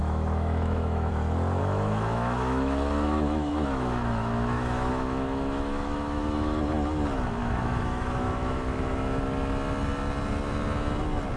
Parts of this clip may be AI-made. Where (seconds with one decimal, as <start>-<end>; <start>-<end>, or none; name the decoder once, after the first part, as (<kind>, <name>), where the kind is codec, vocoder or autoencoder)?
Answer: 0.0-1.1 (autoencoder, DAC-VAE); 1.6-6.6; 7.4-9.2

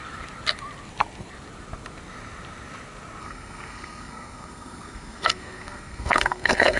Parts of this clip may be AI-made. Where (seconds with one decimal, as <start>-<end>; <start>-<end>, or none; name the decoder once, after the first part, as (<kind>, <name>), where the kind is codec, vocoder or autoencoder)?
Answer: 3.2-6.8 (codec, SNAC)